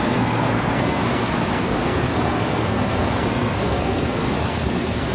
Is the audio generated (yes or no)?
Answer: yes